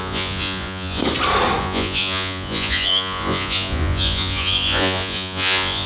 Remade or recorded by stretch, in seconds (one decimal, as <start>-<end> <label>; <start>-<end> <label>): 0.0-1.0 remade; 1.0-1.6 recorded; 1.6-5.9 remade